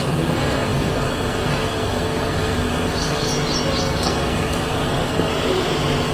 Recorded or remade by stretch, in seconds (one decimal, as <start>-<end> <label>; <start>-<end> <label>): 0.0-3.3 remade; 3.3-3.8 recorded; 3.8-5.3 remade; 5.3-6.1 recorded